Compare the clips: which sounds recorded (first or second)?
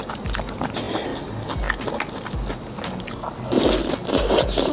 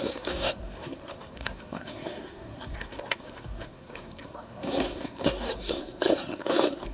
first